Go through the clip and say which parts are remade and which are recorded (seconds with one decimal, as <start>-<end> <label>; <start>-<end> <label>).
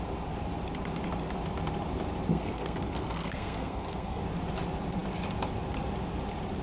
0.0-2.3 recorded; 2.3-4.2 remade; 4.2-6.6 recorded